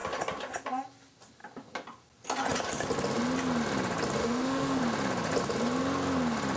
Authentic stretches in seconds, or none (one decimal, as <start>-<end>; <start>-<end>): 0.0-4.2; 4.8-6.6